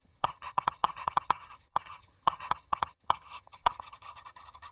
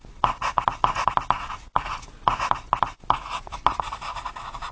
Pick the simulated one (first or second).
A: first